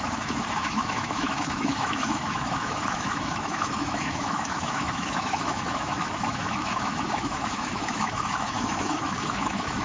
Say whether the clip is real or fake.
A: fake